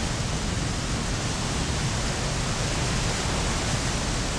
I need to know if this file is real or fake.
real